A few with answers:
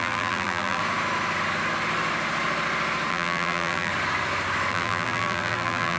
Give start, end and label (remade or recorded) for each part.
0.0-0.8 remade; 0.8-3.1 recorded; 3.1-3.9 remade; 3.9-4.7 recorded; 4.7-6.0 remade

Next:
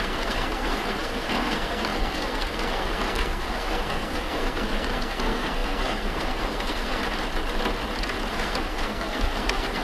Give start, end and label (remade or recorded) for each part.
0.0-7.0 remade; 7.0-8.3 recorded; 8.3-9.8 remade